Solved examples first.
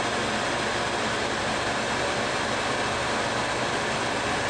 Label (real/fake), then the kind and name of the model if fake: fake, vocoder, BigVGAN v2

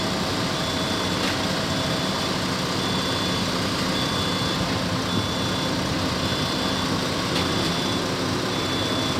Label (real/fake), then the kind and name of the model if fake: real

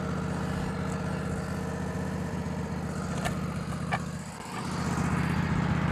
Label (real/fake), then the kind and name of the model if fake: real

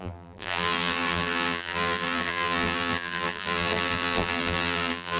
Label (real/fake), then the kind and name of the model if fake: fake, vocoder, BigVGAN v2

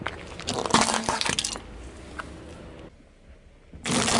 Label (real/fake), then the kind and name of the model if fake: real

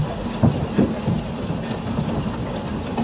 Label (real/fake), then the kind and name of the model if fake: real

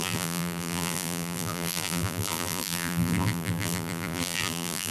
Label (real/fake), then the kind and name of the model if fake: fake, vocoder, BigVGAN v2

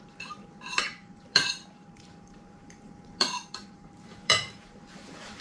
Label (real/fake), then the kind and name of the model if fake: fake, vocoder, BigVGAN v2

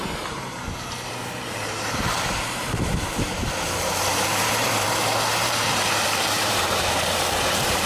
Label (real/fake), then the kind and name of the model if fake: fake, vocoder, BigVGAN v2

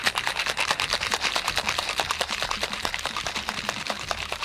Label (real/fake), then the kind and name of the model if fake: fake, vocoder, BigVGAN v2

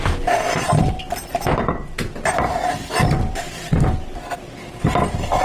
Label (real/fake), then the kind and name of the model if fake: fake, vocoder, BigVGAN v2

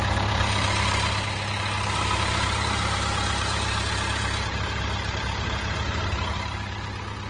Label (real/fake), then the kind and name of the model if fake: fake, vocoder, BigVGAN v2